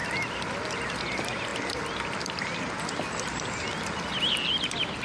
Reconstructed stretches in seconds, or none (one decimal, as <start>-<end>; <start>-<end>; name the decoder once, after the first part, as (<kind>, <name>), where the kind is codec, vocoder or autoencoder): none